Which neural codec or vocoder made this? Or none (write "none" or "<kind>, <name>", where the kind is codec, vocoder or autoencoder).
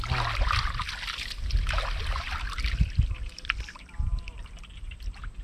none